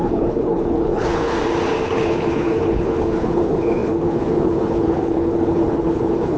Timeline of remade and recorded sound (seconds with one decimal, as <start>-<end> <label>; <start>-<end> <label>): 0.0-1.3 remade; 1.3-1.9 recorded; 1.9-6.4 remade